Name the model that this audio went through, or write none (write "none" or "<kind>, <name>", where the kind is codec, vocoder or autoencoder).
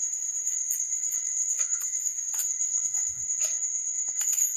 codec, SNAC